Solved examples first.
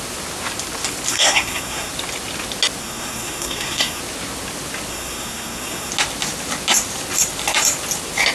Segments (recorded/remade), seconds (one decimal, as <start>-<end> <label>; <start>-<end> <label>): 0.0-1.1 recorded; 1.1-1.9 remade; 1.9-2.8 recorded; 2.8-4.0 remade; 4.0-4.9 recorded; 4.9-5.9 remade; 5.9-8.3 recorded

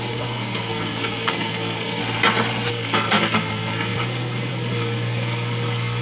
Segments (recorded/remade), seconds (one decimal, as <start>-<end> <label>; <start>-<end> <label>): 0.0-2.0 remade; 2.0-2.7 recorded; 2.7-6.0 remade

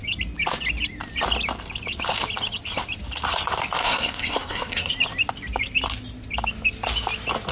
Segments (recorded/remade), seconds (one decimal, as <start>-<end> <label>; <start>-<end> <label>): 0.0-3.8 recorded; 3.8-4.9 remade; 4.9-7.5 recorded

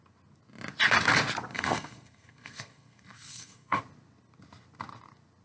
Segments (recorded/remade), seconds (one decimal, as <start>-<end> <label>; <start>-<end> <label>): 0.0-1.5 recorded; 1.5-3.8 remade; 3.8-5.4 recorded

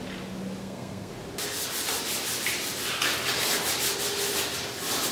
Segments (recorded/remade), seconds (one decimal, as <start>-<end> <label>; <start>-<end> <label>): 0.0-0.6 recorded; 0.6-1.1 remade; 1.1-5.1 recorded

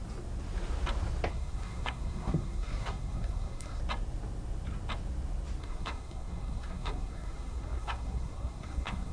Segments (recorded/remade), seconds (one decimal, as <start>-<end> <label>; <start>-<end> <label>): 0.0-1.3 recorded; 1.3-3.8 remade; 3.8-5.6 recorded; 5.6-9.1 remade

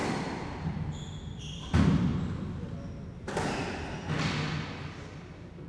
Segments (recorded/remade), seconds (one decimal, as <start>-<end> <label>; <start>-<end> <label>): 0.0-5.7 recorded